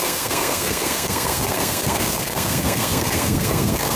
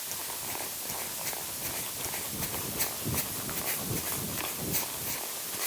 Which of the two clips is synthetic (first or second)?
first